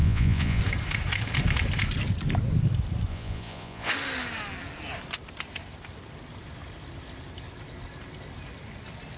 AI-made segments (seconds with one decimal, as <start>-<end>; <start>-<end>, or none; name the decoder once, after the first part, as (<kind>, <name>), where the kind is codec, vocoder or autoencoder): 0.0-0.6 (vocoder, Vocos); 3.1-3.9